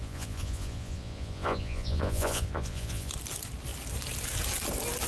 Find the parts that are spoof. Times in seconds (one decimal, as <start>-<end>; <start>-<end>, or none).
0.0-3.1